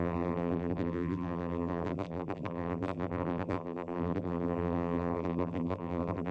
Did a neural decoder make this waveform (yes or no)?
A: yes